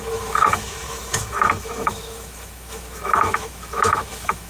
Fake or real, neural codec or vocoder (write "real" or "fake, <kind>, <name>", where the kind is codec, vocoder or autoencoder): fake, autoencoder, DAC-VAE